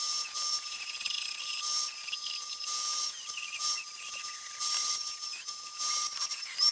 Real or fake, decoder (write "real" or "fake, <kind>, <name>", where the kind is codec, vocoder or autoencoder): fake, vocoder, BigVGAN v2